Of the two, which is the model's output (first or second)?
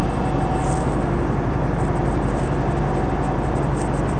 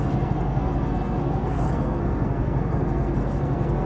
second